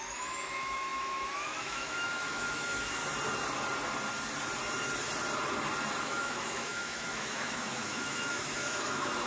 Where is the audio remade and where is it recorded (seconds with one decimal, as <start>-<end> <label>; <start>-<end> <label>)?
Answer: 0.0-3.0 remade; 3.0-6.0 recorded; 6.0-9.3 remade